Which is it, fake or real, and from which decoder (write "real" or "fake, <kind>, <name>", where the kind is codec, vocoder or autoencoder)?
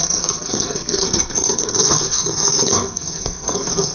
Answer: fake, codec, SNAC